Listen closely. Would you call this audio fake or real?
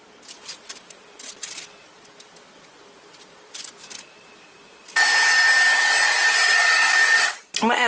real